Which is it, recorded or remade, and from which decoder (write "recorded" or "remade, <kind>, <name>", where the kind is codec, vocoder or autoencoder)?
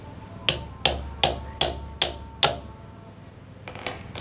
recorded